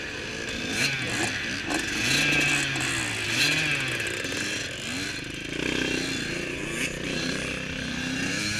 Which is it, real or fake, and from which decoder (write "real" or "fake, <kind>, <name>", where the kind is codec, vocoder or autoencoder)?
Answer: real